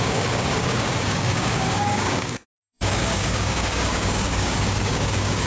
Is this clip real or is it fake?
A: fake